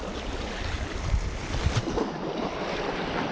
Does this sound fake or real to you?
real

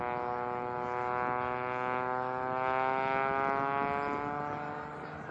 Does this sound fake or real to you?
real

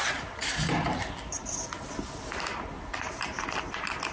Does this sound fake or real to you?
real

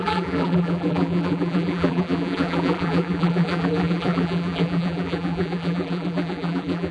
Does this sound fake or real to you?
fake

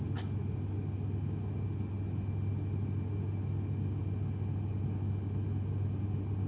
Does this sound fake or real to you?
real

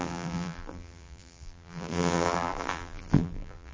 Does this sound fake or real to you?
fake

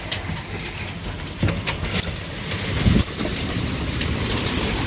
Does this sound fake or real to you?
real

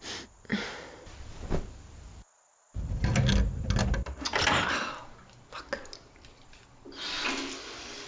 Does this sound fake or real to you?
real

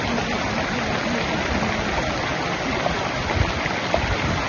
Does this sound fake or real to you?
real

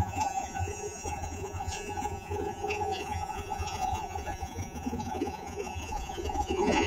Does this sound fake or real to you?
fake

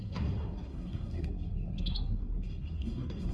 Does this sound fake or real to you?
fake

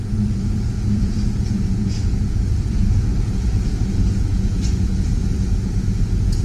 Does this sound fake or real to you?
fake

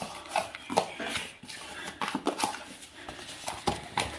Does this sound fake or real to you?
real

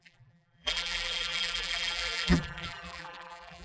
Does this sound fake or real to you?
fake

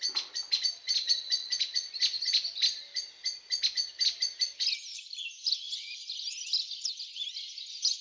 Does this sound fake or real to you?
real